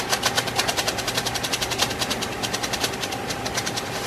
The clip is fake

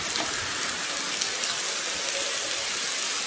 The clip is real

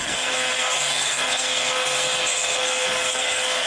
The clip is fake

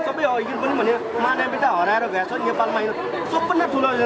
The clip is real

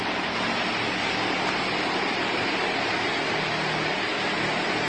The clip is real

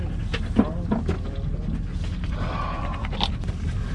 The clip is real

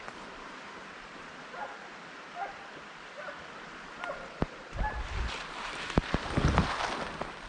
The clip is fake